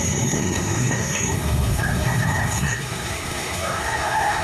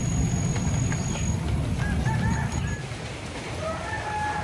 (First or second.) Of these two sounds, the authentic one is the second